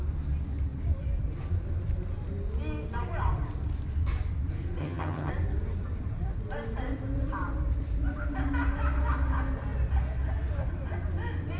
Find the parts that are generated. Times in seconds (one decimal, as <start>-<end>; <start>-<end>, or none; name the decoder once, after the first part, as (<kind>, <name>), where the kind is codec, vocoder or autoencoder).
4.8-5.3 (vocoder, HiFi-GAN)